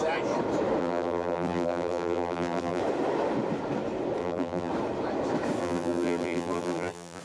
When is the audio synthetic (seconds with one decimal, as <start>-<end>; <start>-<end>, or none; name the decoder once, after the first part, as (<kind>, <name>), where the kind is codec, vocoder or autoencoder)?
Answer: 0.8-2.8 (vocoder, BigVGAN v2); 4.2-4.7; 5.6-7.2